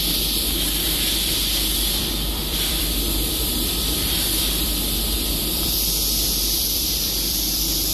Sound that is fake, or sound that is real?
fake